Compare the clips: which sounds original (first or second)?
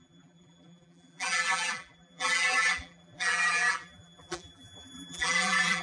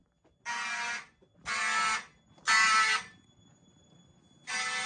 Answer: second